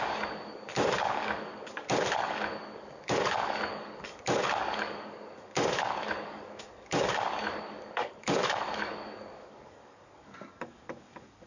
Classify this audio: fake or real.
fake